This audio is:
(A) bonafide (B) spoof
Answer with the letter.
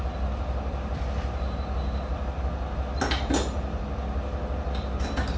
A